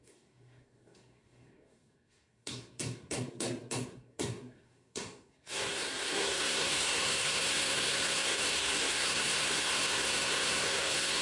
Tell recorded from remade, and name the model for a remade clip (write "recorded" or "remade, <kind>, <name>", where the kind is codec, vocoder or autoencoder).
remade, codec, SNAC